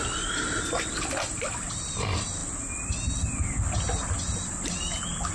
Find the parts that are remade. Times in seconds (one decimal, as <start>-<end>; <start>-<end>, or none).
none

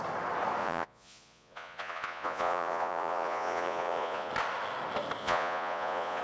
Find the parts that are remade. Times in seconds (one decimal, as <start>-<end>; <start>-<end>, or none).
0.6-4.3; 5.2-6.2

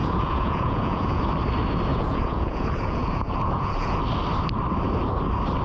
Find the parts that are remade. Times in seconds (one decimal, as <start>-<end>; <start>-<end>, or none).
0.0-1.2; 1.9-4.0

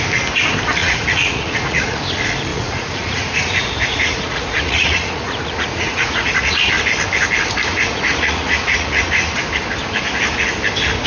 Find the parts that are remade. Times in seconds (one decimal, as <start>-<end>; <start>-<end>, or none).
0.8-2.0; 2.5-6.7; 7.7-9.4

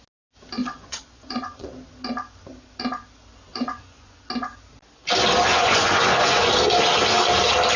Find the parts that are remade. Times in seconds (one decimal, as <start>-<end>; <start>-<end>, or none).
0.6-1.7; 3.5-4.2; 5.5-6.5